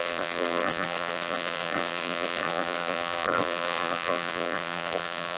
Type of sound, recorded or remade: remade